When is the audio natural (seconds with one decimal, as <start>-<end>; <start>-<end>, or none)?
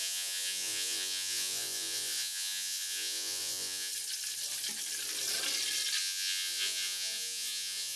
3.9-6.0